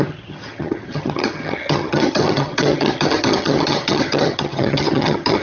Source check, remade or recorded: remade